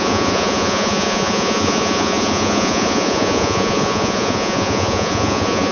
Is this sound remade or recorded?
remade